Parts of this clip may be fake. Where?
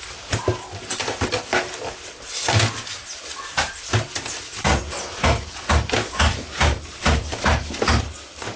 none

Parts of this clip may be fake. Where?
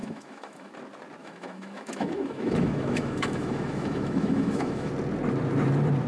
0.0-0.7 (autoencoder, DAC-VAE); 1.2-4.9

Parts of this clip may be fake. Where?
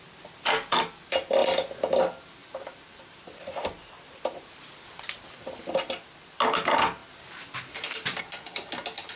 2.4-3.9 (vocoder, BigVGAN v2)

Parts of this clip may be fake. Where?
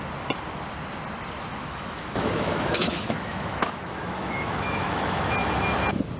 1.6-5.3 (autoencoder, DAC-VAE)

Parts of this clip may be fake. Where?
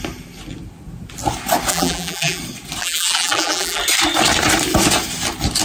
1.7-2.4 (vocoder, BigVGAN v2); 2.8-3.8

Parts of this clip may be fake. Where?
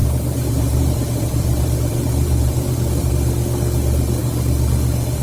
0.0-3.1 (vocoder, BigVGAN v2)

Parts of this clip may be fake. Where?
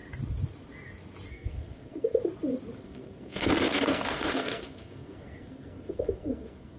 1.3-2.2 (codec, SNAC); 2.8-6.8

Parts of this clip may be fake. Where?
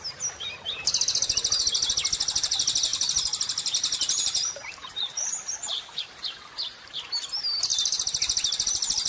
2.9-7.1 (vocoder, BigVGAN v2); 7.7-9.1